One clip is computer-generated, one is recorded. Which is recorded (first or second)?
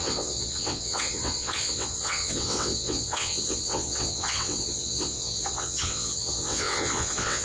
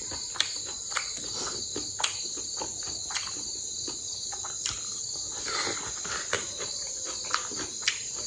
second